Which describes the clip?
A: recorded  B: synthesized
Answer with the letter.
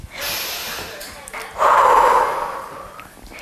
A